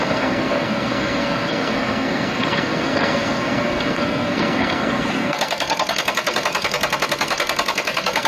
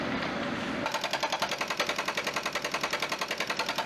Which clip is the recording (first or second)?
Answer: second